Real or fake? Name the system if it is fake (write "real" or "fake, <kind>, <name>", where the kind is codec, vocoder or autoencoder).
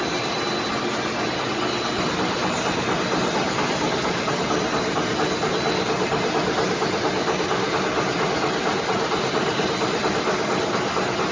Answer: real